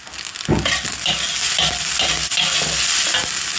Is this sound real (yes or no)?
yes